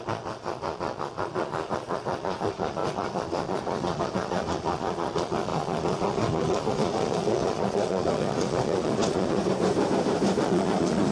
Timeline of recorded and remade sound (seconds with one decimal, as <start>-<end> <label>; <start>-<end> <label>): 0.0-9.4 remade; 9.4-10.4 recorded; 10.4-11.1 remade